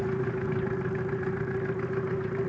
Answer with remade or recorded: recorded